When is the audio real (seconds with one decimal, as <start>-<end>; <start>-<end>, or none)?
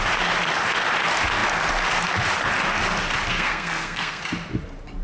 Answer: 0.0-3.3; 4.2-5.0